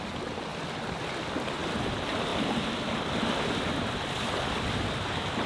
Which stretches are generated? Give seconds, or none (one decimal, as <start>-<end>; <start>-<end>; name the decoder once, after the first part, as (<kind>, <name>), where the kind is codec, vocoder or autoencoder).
none